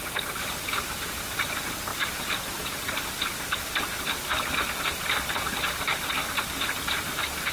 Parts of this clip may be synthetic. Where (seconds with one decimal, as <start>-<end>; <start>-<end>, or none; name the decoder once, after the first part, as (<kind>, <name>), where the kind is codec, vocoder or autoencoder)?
0.0-7.5 (vocoder, BigVGAN v2)